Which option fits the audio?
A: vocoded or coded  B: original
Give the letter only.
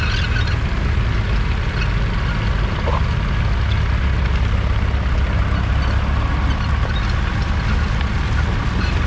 B